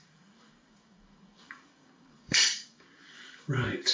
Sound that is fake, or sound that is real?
fake